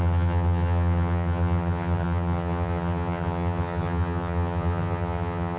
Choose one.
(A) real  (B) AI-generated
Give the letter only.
B